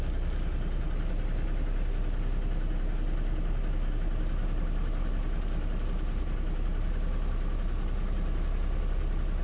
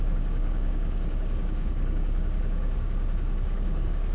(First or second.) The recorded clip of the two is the first